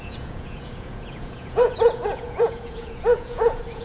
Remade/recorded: remade